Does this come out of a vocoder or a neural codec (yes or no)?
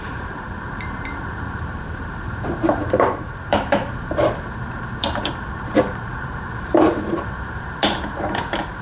yes